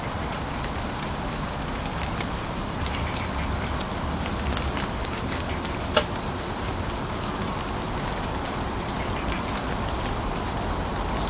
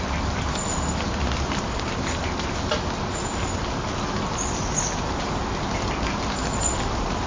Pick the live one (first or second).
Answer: second